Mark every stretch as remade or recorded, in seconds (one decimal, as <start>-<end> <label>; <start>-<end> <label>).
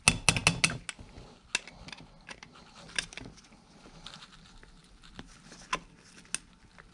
0.0-6.9 recorded